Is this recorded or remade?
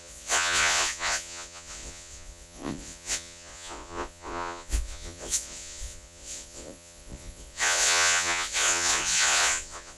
remade